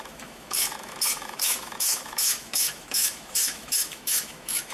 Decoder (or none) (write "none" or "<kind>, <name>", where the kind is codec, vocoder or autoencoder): autoencoder, DAC-VAE